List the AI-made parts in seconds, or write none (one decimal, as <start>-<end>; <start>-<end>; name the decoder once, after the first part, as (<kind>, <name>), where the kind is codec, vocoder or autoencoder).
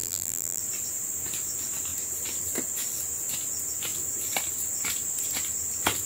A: 0.0-0.6 (vocoder, BigVGAN v2)